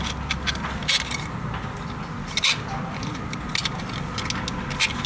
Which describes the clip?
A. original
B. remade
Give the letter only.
A